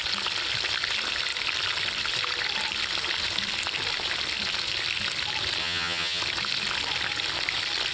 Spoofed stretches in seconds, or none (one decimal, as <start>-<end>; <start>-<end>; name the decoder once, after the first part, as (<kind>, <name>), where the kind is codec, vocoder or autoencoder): 5.6-6.2 (vocoder, HiFi-GAN)